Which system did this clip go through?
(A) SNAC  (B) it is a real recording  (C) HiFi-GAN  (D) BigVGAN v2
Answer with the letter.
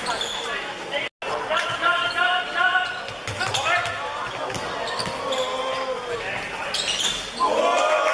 B